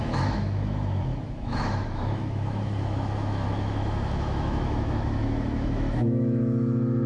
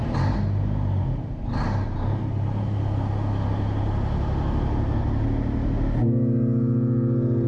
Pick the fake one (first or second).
first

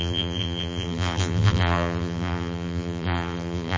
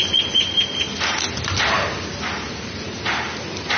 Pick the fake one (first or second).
first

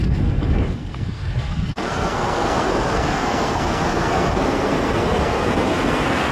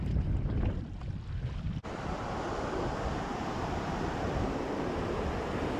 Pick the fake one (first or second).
first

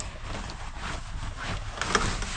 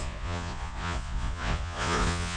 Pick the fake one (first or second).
second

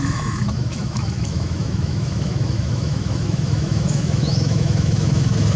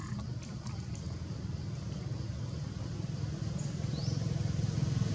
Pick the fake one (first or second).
first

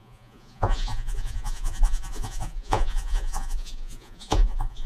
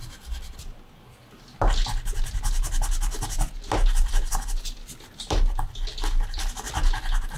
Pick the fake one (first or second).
first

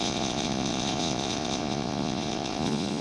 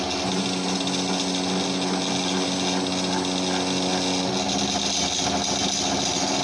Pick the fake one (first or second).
first